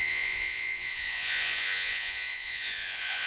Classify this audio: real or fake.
fake